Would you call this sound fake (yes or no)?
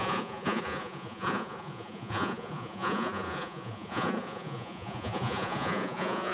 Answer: yes